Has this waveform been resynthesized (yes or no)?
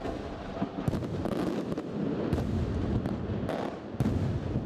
no